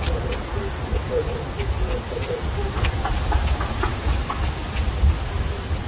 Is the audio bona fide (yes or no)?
yes